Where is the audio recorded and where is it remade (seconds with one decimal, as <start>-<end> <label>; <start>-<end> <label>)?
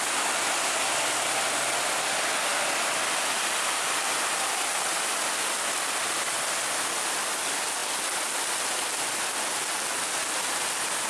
0.0-11.1 recorded